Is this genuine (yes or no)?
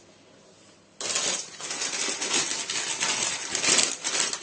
yes